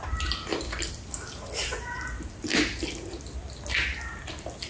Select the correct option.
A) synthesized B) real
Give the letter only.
B